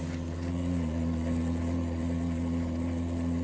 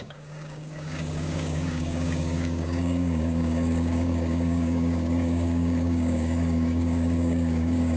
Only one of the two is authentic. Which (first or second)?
first